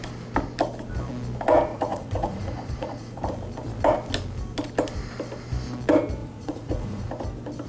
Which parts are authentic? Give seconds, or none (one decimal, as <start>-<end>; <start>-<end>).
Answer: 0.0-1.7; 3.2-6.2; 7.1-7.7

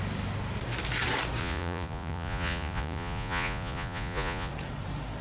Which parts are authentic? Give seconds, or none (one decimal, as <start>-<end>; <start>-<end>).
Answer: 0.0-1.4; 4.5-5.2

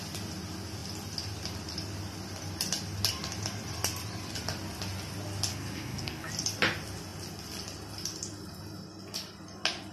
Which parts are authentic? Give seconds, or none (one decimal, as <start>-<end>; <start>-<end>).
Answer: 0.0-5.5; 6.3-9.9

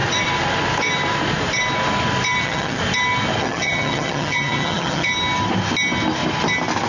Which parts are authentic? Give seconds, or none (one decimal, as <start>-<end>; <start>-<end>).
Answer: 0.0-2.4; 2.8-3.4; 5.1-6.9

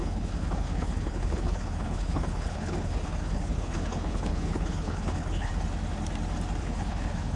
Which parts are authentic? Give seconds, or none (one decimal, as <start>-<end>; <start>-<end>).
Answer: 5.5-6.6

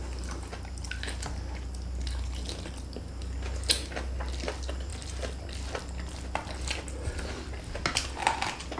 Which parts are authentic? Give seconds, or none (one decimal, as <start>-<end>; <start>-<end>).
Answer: 0.0-8.8

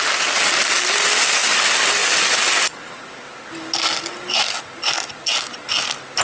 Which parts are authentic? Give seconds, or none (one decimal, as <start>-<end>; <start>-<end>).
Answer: 0.0-6.2